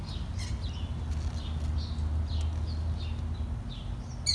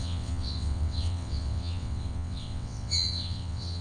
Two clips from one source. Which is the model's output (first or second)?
second